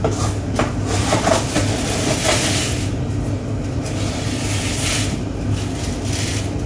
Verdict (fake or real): real